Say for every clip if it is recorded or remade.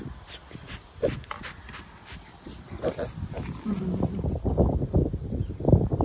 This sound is recorded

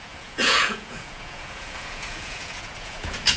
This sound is remade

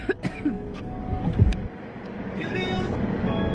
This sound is remade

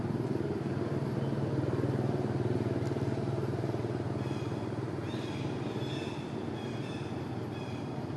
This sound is recorded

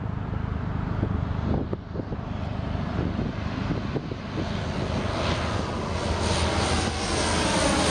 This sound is recorded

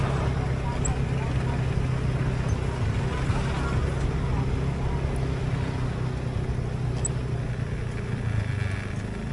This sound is recorded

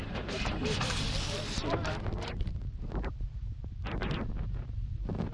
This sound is recorded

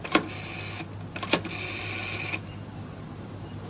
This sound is recorded